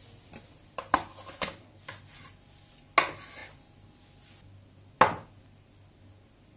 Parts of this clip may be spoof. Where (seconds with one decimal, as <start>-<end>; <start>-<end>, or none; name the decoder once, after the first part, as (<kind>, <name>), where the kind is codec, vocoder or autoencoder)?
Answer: none